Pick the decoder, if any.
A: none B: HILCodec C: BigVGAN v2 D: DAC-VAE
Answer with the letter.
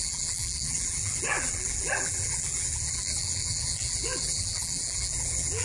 C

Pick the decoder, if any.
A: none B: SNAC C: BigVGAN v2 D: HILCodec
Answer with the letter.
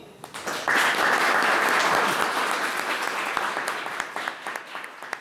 A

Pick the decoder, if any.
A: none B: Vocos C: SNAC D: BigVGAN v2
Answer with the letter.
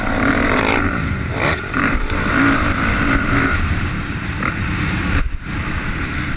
D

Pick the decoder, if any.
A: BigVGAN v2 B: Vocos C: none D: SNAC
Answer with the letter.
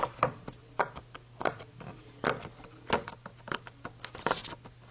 C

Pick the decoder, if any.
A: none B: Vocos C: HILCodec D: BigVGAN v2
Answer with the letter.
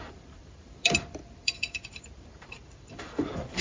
D